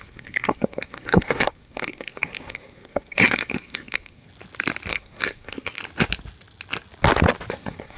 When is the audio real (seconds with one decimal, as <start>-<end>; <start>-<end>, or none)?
4.3-4.9; 5.8-7.5